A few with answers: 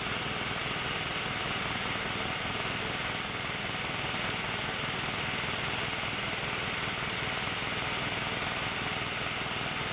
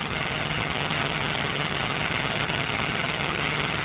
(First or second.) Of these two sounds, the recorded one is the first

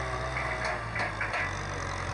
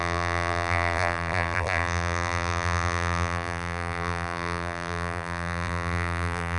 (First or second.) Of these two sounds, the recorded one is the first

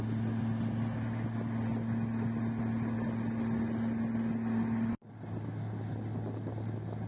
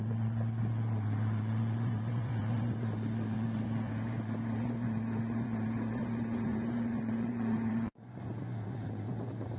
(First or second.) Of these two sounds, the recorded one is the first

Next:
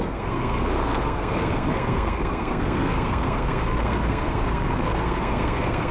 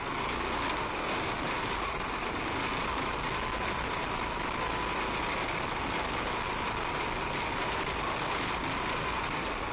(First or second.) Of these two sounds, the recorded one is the second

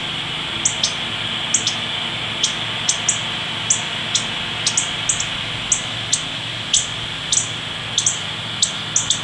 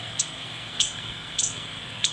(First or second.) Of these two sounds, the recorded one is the first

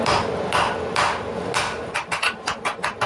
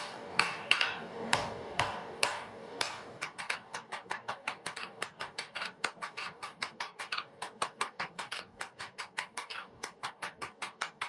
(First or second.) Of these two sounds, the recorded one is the first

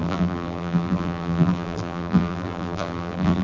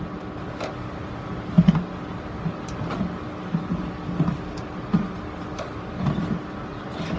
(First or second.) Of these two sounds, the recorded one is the second